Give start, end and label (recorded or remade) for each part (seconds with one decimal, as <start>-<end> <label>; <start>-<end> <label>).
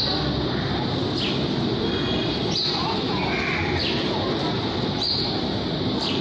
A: 0.0-2.2 recorded; 2.2-3.2 remade; 3.2-3.8 recorded; 3.8-5.4 remade; 5.4-6.2 recorded